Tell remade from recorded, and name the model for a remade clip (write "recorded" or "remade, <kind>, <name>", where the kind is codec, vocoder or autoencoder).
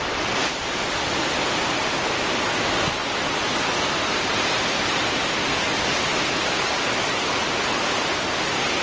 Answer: recorded